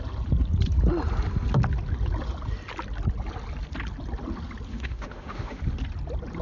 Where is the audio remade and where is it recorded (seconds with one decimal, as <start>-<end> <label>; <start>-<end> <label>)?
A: 0.0-4.7 recorded; 4.7-5.6 remade; 5.6-6.4 recorded